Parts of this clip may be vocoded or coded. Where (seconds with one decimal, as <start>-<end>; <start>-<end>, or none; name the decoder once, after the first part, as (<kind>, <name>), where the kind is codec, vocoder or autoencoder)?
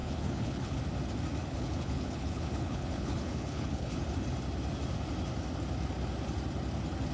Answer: 0.0-0.8 (codec, HILCodec); 1.4-4.0